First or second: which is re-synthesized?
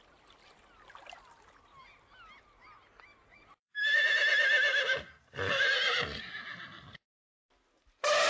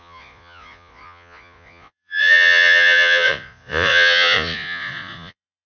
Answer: second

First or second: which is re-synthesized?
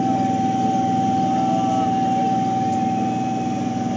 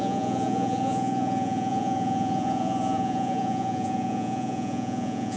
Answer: second